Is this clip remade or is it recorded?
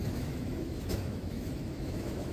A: remade